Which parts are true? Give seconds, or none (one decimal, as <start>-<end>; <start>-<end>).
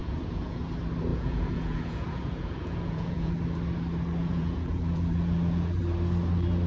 0.6-1.1; 3.3-4.2; 5.8-6.7